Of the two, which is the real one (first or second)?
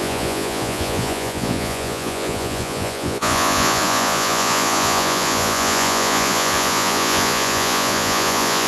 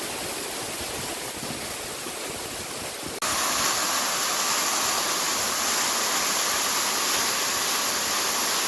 second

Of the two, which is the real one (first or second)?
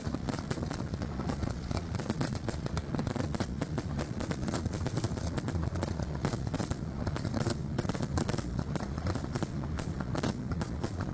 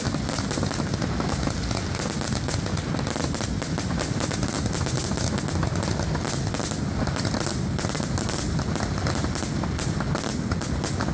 second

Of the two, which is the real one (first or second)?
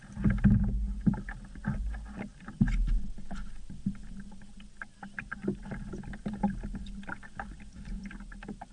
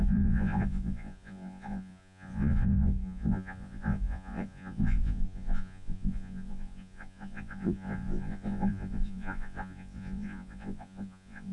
first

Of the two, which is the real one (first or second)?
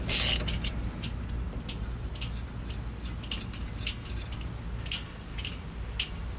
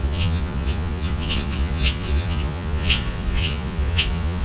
first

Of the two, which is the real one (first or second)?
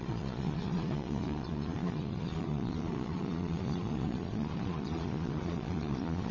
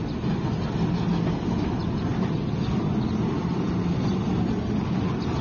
second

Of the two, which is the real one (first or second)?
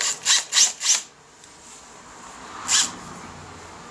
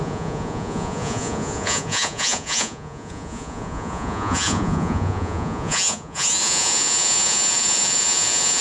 first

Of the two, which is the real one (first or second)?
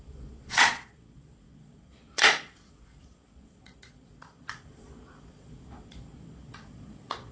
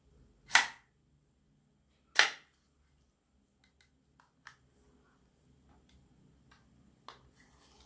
second